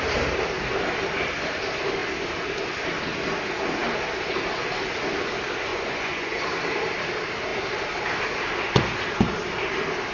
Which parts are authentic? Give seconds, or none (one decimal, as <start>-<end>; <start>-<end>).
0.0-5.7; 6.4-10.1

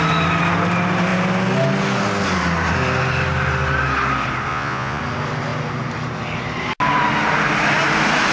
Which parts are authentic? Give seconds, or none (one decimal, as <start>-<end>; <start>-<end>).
0.0-4.5; 5.0-8.3

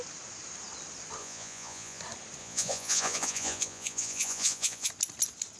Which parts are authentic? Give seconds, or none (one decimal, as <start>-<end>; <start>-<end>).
0.0-1.2; 2.0-2.4; 4.9-5.6